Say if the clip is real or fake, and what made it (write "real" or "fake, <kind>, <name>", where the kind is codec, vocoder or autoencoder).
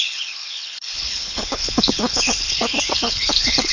fake, codec, HILCodec